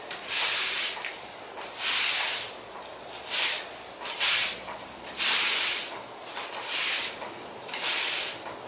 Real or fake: fake